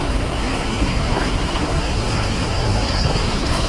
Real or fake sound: fake